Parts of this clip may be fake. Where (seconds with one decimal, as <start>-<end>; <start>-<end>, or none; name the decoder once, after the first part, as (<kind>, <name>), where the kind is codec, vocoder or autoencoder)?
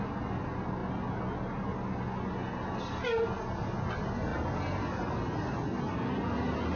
none